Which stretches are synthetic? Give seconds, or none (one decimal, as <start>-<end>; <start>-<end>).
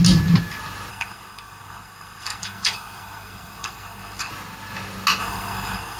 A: 0.9-4.3; 5.2-6.0